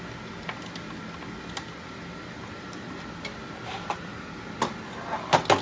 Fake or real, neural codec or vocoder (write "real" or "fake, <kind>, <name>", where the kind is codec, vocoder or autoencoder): real